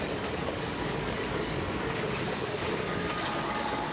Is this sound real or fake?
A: fake